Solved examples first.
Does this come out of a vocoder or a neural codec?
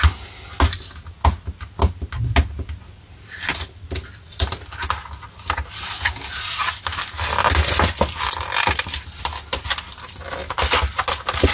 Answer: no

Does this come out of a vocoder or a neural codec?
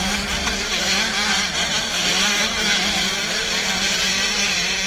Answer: no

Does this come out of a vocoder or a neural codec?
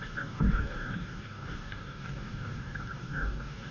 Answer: yes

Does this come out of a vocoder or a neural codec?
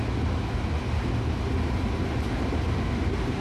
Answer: no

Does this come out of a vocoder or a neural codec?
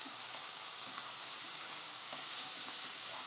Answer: yes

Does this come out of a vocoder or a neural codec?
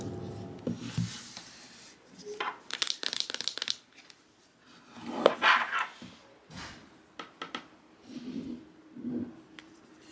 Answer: no